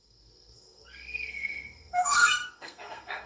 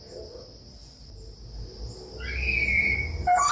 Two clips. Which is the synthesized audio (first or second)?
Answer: first